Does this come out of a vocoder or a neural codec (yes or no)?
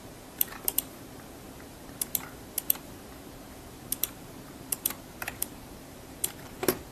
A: yes